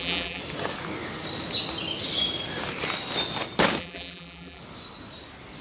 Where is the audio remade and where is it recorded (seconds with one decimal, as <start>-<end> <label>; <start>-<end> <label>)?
0.0-0.4 remade; 0.4-3.8 recorded; 3.8-4.6 remade; 4.6-5.6 recorded